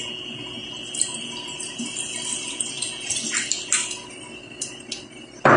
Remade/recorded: recorded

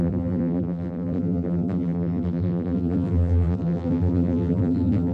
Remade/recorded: remade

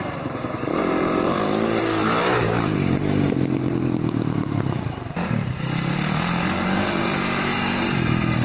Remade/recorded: remade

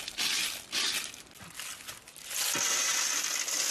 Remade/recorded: recorded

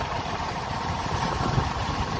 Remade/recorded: remade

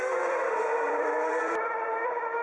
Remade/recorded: remade